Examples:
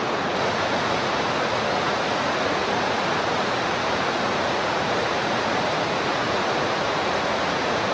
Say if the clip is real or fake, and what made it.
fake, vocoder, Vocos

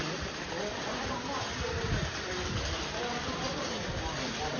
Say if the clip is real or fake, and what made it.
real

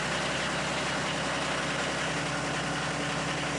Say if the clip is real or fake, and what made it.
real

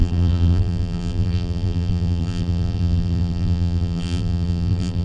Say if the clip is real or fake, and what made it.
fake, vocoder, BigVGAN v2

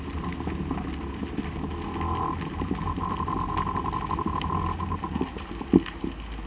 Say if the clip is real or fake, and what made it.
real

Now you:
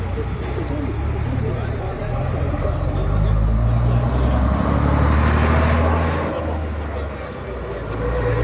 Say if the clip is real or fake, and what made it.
real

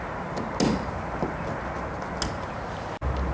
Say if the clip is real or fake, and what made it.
real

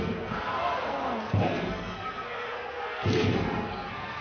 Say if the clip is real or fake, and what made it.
fake, codec, SNAC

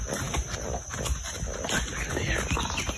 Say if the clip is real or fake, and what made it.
real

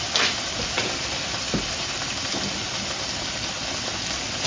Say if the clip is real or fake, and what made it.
real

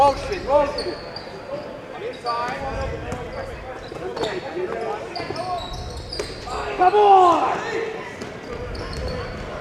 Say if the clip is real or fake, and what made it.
real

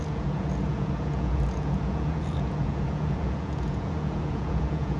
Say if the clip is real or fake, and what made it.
fake, vocoder, Vocos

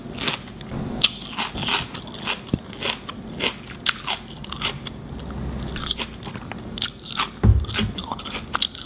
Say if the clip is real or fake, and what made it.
real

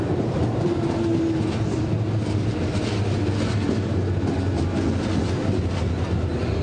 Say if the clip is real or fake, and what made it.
real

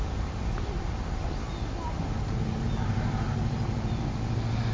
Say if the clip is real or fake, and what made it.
real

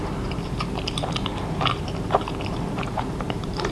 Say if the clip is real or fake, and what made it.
fake, vocoder, BigVGAN v2